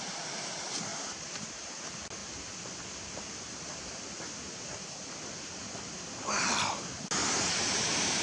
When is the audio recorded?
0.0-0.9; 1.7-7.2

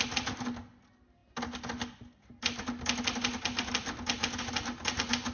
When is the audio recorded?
0.0-5.3

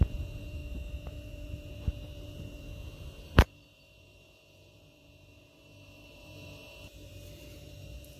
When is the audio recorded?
0.6-1.1

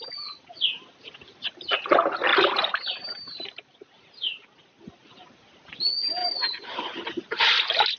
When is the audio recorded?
0.0-2.3; 4.5-6.2; 7.1-8.0

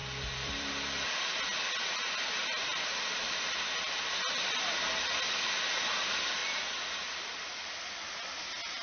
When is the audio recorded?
0.7-2.4; 4.1-8.8

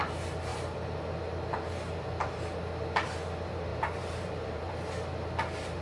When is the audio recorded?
0.0-3.7; 4.7-5.8

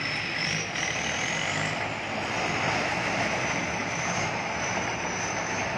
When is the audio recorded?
0.0-3.8

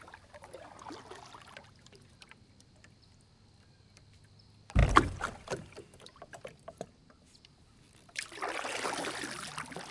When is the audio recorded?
0.0-4.8; 9.2-9.9